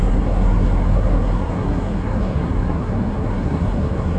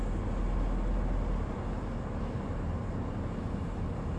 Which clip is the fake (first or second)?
first